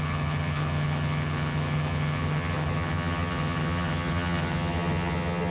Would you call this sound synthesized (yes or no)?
yes